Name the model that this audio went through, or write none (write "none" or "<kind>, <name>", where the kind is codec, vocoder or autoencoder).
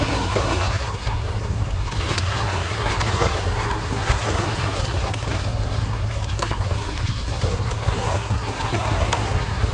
codec, SNAC